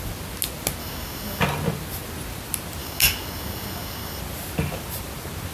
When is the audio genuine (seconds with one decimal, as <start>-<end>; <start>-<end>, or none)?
0.0-0.8; 1.4-2.8; 4.2-5.5